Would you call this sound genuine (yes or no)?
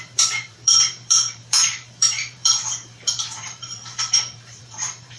no